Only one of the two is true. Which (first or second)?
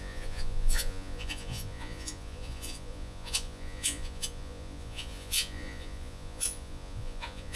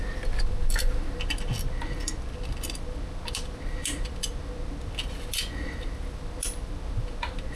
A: second